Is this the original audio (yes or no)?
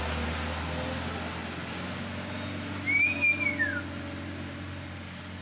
yes